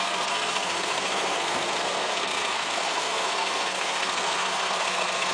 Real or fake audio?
fake